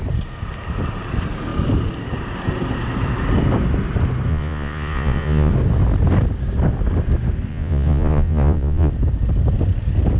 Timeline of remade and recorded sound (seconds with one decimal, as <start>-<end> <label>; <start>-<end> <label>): 0.0-4.3 recorded; 4.3-5.5 remade; 5.5-7.5 recorded; 7.5-8.9 remade; 8.9-10.2 recorded